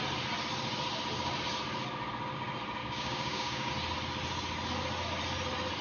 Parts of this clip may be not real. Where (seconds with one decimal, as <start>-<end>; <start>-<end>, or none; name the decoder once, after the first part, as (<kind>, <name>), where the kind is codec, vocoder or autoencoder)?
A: 2.8-3.7 (codec, DAC)